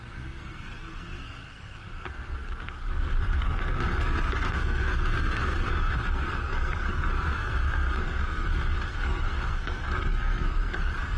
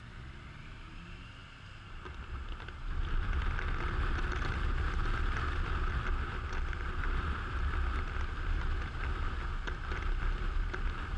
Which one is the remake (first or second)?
first